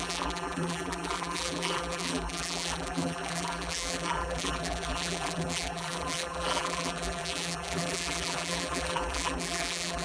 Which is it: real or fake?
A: fake